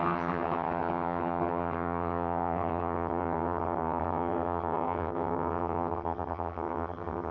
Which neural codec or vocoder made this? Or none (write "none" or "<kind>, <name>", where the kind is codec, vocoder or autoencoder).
vocoder, HiFi-GAN